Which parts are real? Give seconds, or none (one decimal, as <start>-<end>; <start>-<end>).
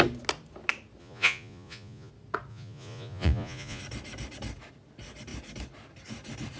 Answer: 0.0-1.0; 2.1-2.5; 3.8-6.6